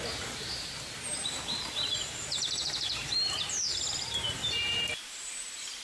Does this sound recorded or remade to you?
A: remade